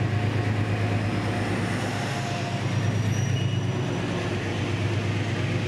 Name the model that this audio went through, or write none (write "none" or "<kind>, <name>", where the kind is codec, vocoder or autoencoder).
none